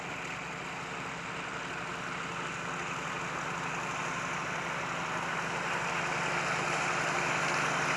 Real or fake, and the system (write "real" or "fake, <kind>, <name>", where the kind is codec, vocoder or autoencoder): real